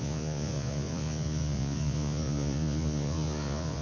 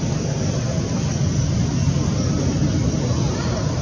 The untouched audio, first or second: second